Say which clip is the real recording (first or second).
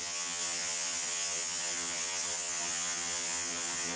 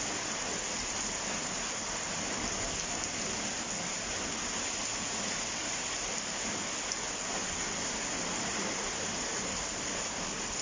second